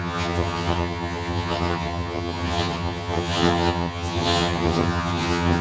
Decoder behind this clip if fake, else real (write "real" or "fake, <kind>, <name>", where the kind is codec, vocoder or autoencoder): fake, vocoder, HiFi-GAN